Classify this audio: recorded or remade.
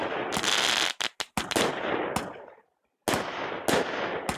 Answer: recorded